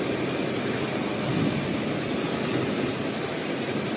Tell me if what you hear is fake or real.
real